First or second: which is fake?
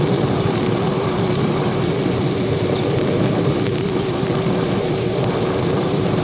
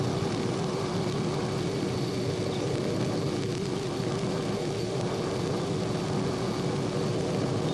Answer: first